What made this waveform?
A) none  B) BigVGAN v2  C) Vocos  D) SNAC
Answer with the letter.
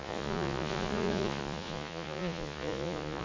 C